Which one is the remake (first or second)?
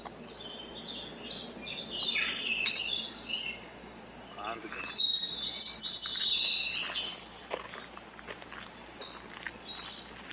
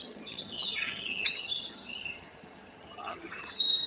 second